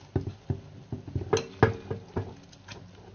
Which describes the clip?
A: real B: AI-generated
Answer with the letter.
A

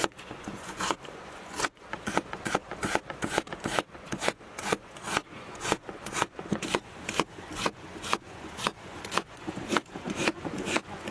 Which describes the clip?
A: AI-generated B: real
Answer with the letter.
A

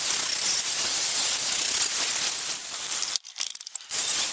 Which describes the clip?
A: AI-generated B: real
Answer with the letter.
B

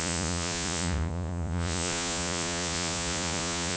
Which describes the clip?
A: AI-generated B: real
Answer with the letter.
A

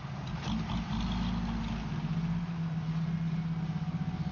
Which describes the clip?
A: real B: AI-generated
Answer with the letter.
A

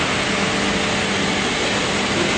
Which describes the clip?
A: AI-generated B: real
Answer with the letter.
B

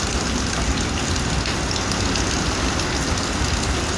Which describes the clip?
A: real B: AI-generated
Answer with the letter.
A